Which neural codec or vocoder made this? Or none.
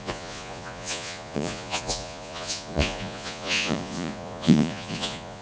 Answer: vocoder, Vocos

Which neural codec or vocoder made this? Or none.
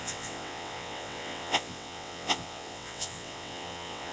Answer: vocoder, WaveNeXt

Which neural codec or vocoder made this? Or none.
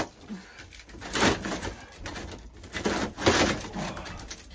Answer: none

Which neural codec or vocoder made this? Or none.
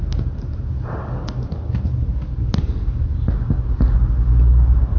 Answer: none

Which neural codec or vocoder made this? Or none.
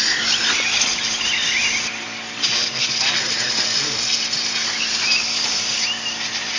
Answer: none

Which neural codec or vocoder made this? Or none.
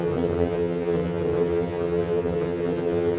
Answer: vocoder, HiFi-GAN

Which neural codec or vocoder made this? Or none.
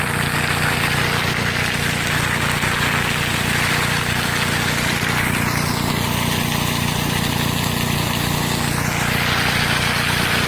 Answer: none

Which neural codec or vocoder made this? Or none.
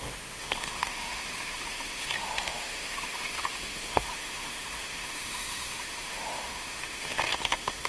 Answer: autoencoder, DAC-VAE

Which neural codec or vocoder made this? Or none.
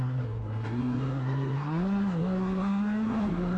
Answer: codec, SNAC